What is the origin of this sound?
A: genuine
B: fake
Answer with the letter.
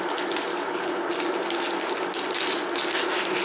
A